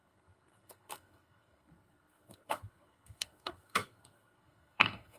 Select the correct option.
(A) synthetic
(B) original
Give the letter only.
A